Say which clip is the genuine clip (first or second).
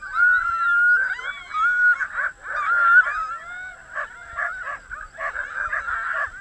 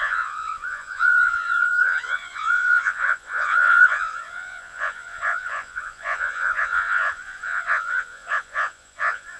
first